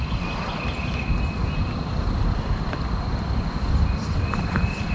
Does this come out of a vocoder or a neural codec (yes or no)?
no